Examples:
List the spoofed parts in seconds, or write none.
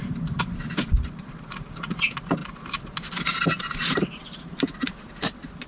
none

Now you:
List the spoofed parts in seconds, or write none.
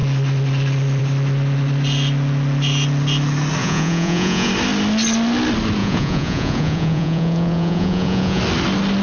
3.6-4.5 (vocoder, Vocos); 5.8-8.4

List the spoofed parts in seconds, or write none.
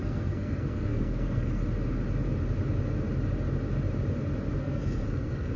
0.0-1.6 (codec, SNAC); 4.6-5.6